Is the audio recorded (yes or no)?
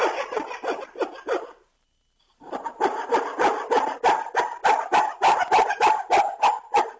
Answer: yes